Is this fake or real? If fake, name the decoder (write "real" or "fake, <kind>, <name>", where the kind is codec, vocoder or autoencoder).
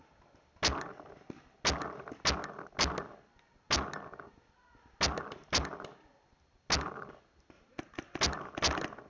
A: real